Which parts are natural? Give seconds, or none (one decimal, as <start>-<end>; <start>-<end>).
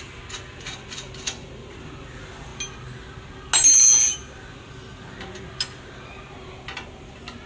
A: 0.0-7.5